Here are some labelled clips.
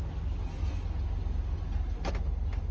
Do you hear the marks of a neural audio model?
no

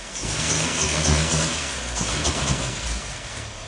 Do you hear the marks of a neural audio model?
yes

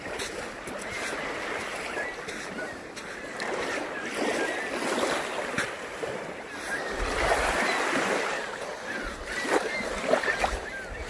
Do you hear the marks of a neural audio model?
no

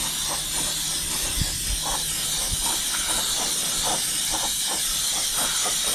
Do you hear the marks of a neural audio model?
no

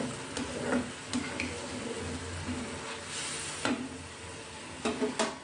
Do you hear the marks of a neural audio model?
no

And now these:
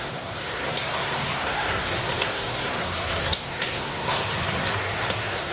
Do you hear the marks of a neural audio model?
yes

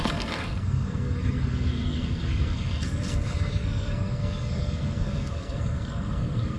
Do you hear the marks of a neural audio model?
yes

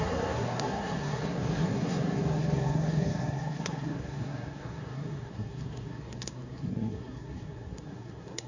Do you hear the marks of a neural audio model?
yes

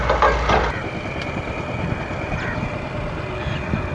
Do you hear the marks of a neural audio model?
no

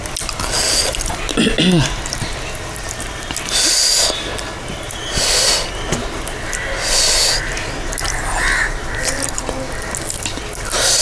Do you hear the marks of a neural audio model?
no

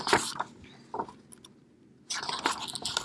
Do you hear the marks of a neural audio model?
no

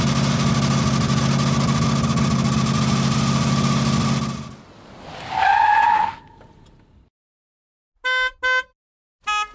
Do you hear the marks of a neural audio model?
no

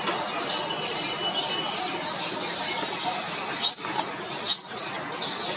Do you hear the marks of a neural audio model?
no